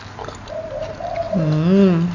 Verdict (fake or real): real